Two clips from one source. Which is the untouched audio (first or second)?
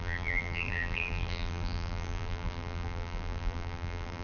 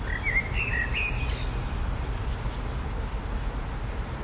second